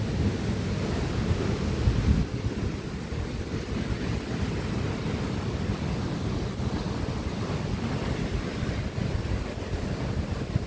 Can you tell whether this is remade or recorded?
recorded